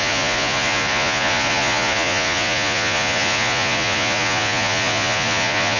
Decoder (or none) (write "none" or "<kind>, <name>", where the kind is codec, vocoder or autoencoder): vocoder, Vocos